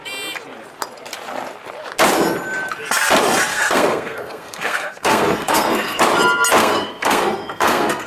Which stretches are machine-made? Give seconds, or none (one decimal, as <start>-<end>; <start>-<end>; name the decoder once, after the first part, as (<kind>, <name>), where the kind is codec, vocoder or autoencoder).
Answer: 3.5-6.0 (codec, SNAC); 6.6-8.1